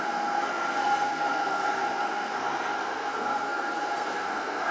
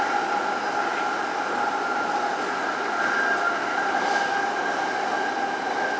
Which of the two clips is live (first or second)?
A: second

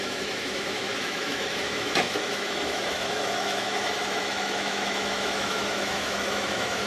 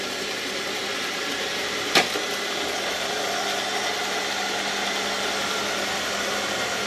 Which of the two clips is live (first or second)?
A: second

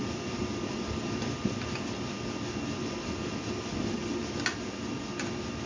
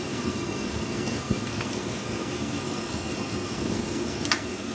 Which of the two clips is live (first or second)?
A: first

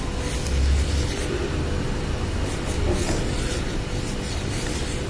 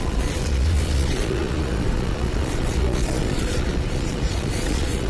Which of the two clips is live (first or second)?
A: first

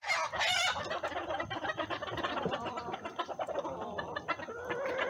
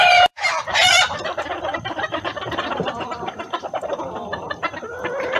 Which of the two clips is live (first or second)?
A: first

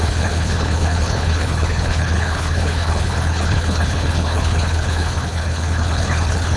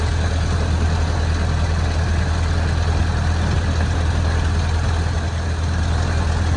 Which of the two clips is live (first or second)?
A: second